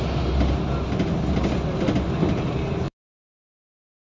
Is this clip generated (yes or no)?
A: no